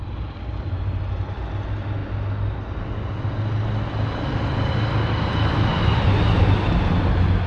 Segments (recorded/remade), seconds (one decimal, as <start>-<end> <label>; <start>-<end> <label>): 0.0-7.5 recorded